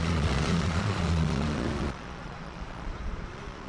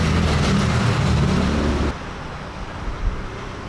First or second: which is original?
second